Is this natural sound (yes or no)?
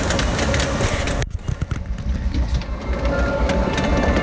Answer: yes